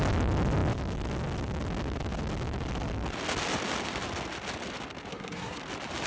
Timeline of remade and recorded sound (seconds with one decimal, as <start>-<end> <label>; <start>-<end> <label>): 0.0-5.1 recorded; 5.1-5.6 remade; 5.6-6.1 recorded